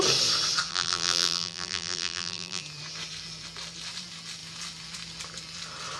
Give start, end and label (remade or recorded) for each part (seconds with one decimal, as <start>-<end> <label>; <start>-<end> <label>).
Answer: 0.0-0.7 recorded; 0.7-2.6 remade; 2.6-6.0 recorded